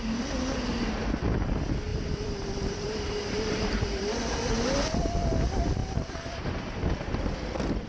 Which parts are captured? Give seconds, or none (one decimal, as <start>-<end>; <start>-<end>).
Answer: 0.0-1.9; 3.7-5.8; 6.8-7.9